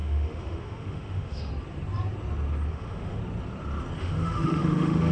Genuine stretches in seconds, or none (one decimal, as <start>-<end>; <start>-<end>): 1.5-2.7; 3.2-4.0